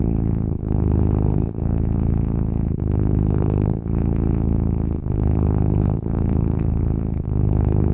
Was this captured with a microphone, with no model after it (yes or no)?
no